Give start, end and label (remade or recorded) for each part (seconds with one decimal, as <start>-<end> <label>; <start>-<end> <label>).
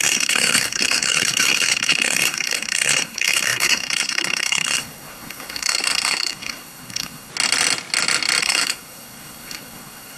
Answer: 0.0-7.3 remade; 7.3-8.4 recorded; 8.4-10.2 remade